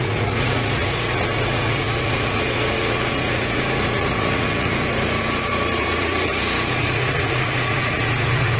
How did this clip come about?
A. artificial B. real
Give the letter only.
A